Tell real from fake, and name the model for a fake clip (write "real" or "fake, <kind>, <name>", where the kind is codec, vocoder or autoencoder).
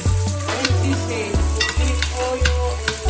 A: real